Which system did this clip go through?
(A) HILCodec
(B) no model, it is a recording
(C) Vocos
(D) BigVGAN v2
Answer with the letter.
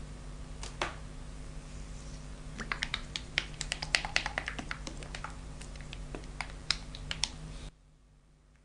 D